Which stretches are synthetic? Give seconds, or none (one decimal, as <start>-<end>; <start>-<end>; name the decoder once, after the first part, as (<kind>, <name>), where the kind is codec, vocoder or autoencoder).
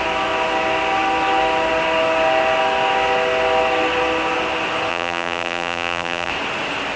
4.9-6.3 (vocoder, BigVGAN v2)